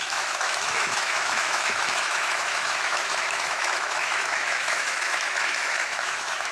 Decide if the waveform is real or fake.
fake